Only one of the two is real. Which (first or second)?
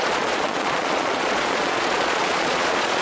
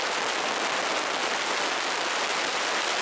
second